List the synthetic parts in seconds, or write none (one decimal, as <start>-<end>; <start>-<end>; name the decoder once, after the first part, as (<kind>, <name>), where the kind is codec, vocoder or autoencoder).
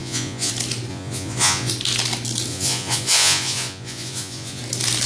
0.0-0.5 (vocoder, Vocos); 0.9-1.7; 2.5-4.6